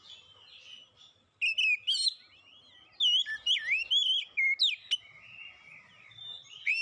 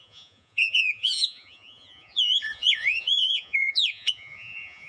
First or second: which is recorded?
first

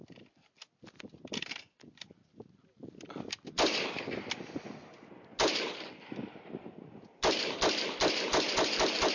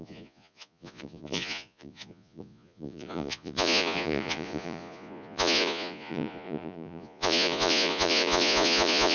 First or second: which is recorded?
first